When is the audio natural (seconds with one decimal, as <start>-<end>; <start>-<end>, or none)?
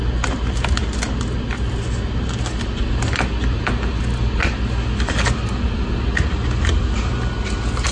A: 0.0-7.9